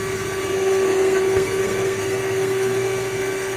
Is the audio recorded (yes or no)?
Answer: no